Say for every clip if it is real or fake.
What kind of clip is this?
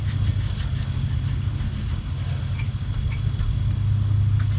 real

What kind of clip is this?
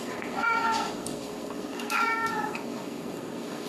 fake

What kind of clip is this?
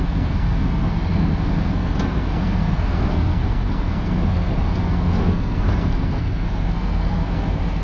fake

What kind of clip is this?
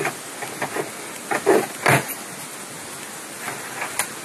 real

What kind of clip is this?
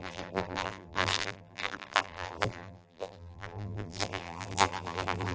fake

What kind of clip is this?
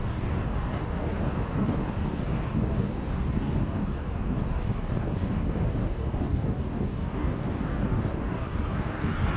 fake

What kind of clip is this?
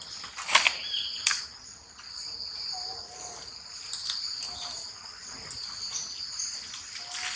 real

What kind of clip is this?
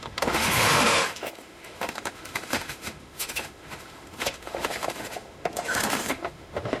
fake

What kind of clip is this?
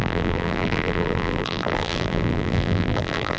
fake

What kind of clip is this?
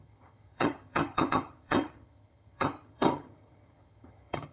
fake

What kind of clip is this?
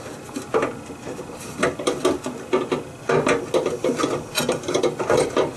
real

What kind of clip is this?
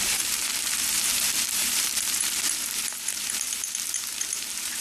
fake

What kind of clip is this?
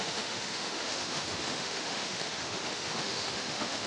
fake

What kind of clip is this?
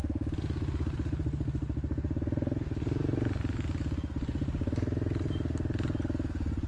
real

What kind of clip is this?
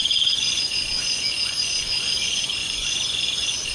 fake